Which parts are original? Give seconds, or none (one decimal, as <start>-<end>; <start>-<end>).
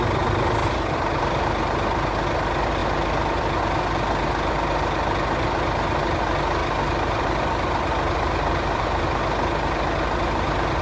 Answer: 0.0-0.6; 1.2-6.6; 9.0-10.8